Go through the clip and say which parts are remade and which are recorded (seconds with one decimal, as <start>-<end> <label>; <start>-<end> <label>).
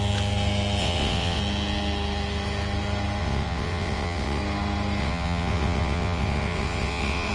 0.0-0.8 recorded; 0.8-1.4 remade; 1.4-3.2 recorded; 3.2-4.4 remade; 4.4-5.0 recorded; 5.0-7.3 remade